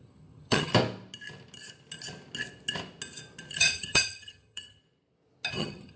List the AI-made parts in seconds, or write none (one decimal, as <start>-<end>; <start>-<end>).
0.0-0.7; 3.5-4.8; 5.5-6.0